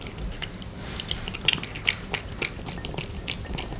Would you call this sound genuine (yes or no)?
yes